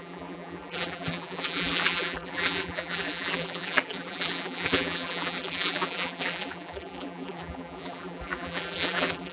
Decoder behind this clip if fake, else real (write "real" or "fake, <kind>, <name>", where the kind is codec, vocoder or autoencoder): fake, vocoder, BigVGAN v2